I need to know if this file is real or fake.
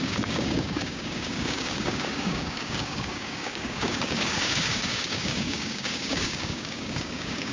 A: fake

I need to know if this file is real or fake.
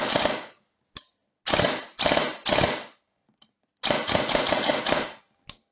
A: real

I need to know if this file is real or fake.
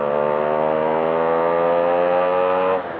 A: real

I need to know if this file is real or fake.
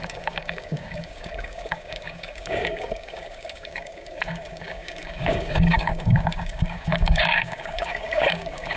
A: fake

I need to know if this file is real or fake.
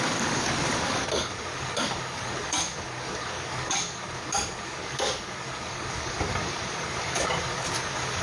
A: fake